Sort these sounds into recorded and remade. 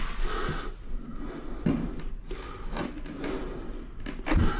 recorded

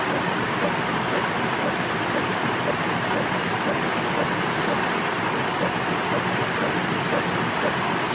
recorded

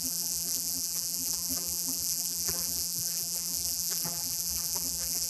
remade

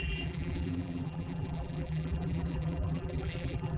remade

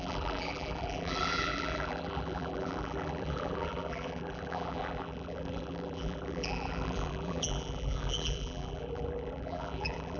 remade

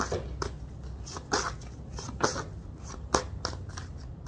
recorded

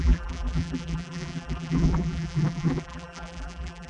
remade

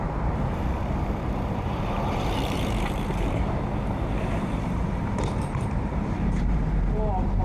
remade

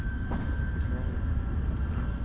recorded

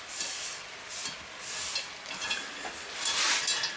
recorded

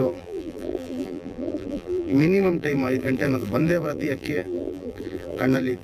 remade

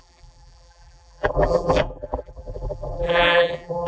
remade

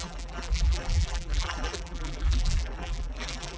remade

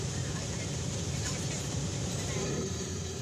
remade